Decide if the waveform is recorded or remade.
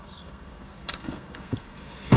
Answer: remade